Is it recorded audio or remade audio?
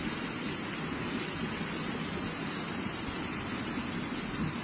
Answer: recorded